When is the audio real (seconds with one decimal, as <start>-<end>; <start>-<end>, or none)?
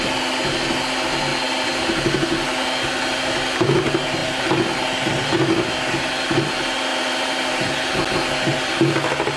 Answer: 0.0-6.9; 7.7-9.4